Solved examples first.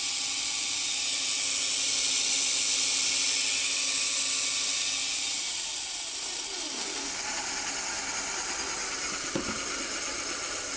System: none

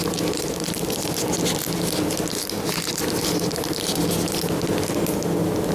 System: none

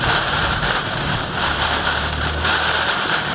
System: vocoder, BigVGAN v2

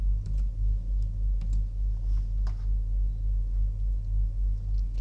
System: none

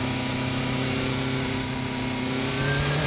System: none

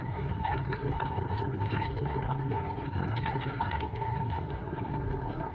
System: codec, SNAC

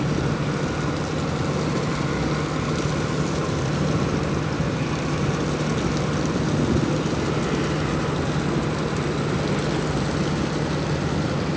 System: none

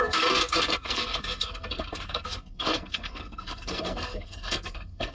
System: codec, SNAC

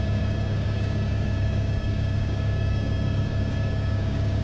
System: codec, DAC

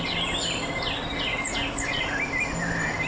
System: none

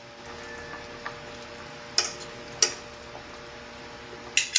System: none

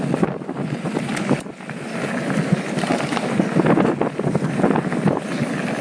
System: none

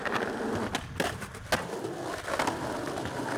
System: none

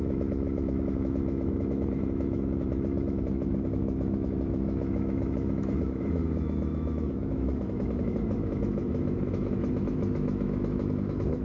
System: autoencoder, DAC-VAE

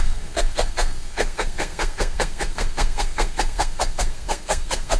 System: codec, SNAC